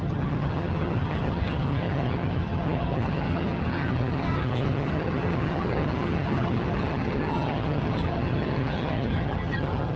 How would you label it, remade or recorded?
remade